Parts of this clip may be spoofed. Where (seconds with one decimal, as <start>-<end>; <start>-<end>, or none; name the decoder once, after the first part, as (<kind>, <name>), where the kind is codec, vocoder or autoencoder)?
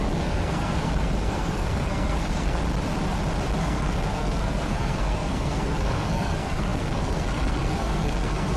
0.0-2.6 (codec, SNAC); 3.6-8.6